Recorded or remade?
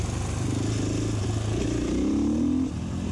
recorded